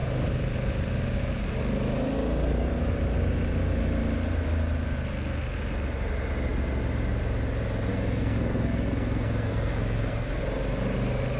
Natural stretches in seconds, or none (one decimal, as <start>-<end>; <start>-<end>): 0.0-7.9; 10.4-11.4